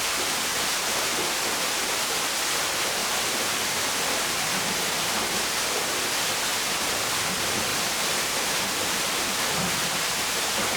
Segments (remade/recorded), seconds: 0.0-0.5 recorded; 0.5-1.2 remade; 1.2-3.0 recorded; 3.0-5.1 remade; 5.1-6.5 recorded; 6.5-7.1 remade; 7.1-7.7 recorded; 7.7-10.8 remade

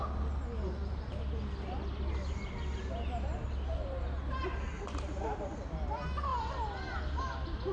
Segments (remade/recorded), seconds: 0.0-7.7 recorded